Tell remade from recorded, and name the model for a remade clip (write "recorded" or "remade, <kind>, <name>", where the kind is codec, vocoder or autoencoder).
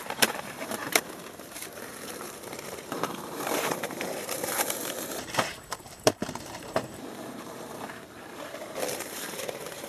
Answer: remade, vocoder, BigVGAN v2